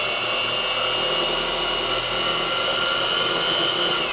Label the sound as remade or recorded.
recorded